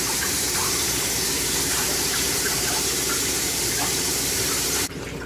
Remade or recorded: remade